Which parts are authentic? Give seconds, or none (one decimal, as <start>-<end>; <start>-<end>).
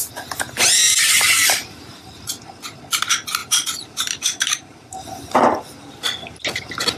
0.0-3.4; 5.6-7.0